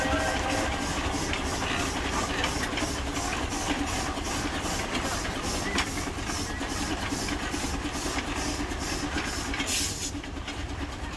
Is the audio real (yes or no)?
yes